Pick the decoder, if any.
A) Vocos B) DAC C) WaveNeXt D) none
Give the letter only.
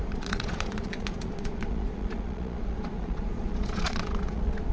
A